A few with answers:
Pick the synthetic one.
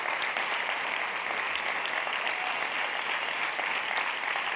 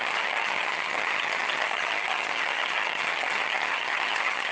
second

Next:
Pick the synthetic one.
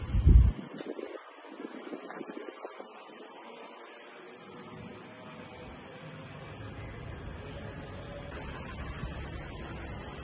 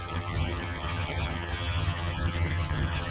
second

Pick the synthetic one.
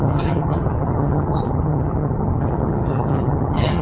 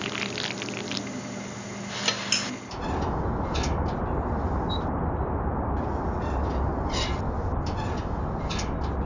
first